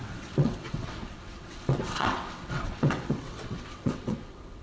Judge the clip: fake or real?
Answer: fake